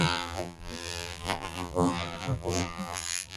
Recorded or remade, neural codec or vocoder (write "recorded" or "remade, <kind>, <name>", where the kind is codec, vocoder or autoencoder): remade, vocoder, BigVGAN v2